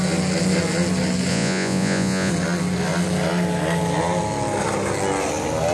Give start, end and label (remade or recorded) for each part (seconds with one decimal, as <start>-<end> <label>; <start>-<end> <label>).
0.0-1.3 recorded; 1.3-2.3 remade; 2.3-5.7 recorded